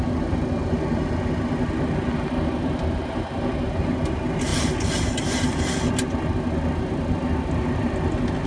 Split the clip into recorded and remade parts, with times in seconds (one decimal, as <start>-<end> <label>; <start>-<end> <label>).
0.0-8.5 recorded